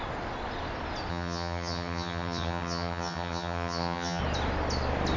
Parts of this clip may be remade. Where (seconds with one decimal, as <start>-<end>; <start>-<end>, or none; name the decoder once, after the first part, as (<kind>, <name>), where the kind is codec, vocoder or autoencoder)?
1.1-4.2 (vocoder, HiFi-GAN)